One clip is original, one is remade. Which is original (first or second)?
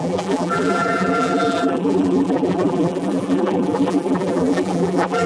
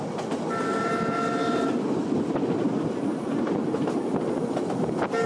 second